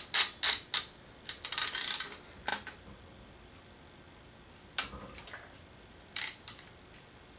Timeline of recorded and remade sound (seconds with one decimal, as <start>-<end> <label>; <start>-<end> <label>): 0.0-2.5 recorded; 2.5-6.9 remade; 6.9-7.4 recorded